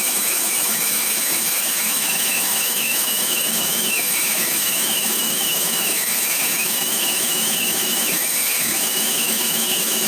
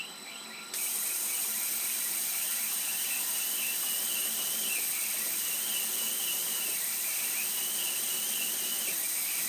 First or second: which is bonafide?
second